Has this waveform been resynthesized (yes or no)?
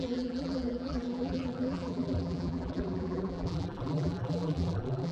yes